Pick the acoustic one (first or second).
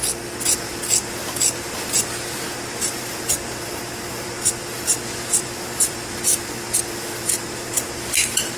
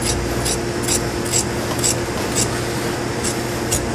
second